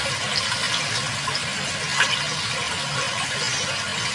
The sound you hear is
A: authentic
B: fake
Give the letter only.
A